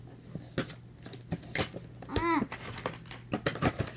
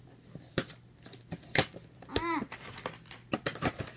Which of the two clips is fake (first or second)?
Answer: second